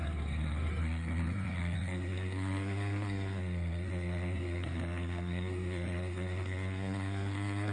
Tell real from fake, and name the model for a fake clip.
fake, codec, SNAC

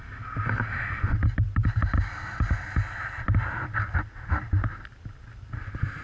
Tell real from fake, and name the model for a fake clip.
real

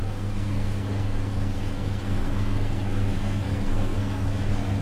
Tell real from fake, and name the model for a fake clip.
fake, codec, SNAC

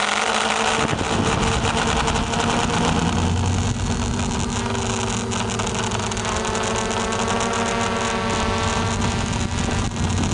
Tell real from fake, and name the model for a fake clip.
real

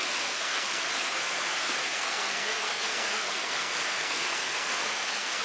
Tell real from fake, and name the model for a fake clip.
fake, codec, SNAC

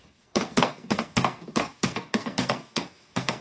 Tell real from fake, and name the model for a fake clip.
fake, codec, SNAC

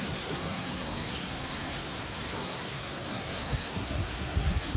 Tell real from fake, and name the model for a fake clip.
fake, codec, SNAC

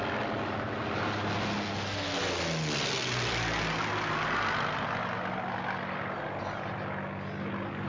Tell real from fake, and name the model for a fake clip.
real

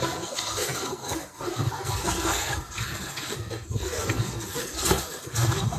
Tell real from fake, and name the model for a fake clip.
fake, codec, SNAC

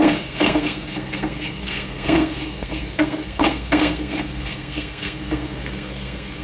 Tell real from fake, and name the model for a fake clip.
fake, codec, SNAC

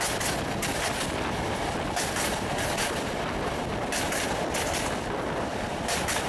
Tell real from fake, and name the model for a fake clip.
real